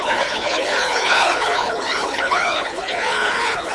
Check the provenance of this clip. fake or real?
fake